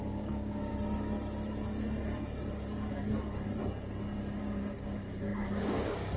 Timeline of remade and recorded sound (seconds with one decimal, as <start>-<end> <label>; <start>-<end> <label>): 0.0-0.7 remade; 0.7-4.4 recorded; 4.4-6.2 remade